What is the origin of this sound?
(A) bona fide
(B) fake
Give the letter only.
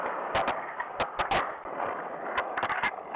A